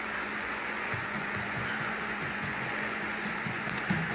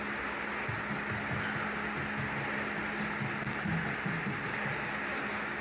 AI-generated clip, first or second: first